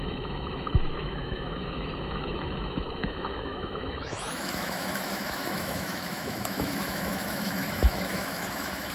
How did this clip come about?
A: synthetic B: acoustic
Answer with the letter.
A